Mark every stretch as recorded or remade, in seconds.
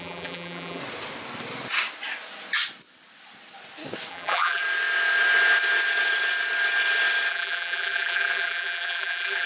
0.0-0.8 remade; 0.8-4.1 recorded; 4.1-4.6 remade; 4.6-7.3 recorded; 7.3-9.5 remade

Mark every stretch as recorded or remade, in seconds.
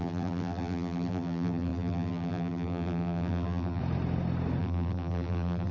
0.0-3.8 remade; 3.8-4.6 recorded; 4.6-5.7 remade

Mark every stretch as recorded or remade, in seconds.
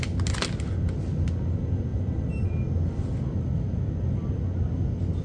0.0-5.2 recorded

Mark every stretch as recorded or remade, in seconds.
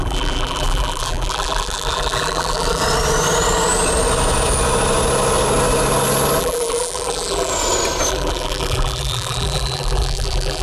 0.0-2.8 remade; 2.8-6.4 recorded; 6.4-7.5 remade; 7.5-8.1 recorded; 8.1-10.6 remade